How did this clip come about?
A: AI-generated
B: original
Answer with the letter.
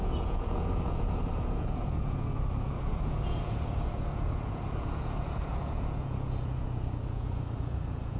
A